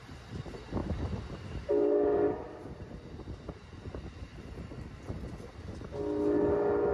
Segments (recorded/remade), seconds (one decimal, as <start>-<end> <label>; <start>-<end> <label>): 0.0-0.8 recorded; 0.8-4.4 remade; 4.4-6.9 recorded